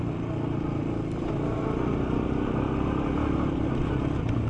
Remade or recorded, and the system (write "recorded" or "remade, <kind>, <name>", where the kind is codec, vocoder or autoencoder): recorded